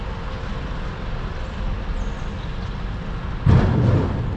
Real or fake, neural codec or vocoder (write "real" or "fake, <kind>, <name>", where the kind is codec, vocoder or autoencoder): real